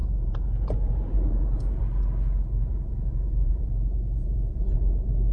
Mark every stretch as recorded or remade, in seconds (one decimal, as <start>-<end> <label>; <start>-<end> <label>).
0.0-1.8 remade; 1.8-2.7 recorded; 2.7-4.6 remade; 4.6-5.3 recorded